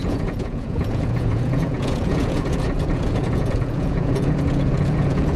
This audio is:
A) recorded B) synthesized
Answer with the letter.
B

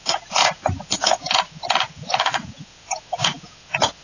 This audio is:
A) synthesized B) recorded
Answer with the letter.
A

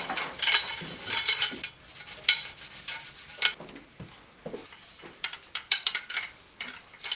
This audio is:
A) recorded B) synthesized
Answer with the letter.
A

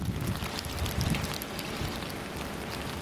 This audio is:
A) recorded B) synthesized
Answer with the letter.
A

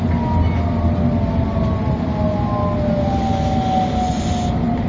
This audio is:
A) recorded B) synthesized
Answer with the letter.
A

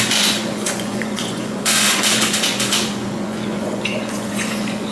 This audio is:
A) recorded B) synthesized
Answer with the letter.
B